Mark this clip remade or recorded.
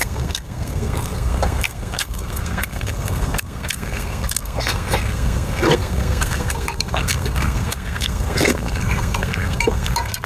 remade